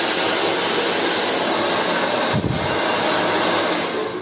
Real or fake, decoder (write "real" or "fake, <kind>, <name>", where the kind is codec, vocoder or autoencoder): real